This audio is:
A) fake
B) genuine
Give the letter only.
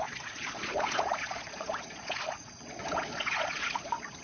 A